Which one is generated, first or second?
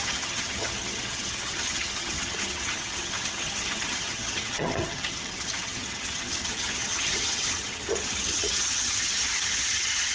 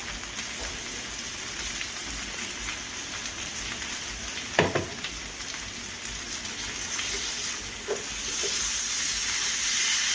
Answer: first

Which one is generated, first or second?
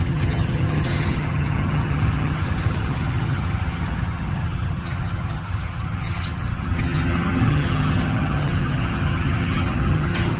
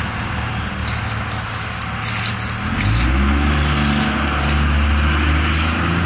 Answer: first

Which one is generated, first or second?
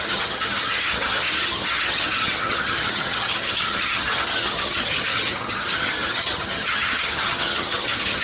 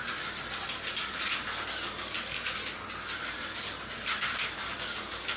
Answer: first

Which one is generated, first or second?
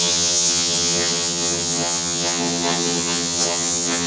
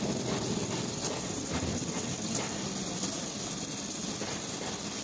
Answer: first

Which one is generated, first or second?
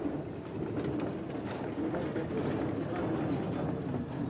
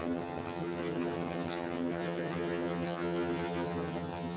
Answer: second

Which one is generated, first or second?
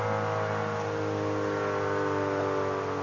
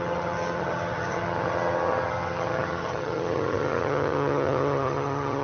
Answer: second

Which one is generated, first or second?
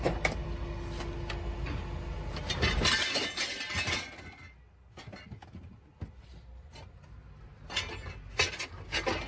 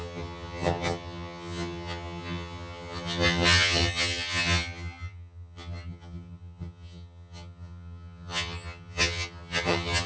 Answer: second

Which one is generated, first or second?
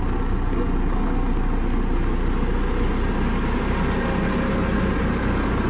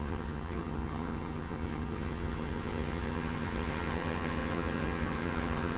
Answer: second